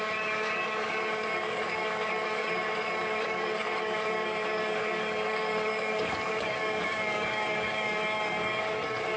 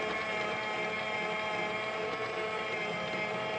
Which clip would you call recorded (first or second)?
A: second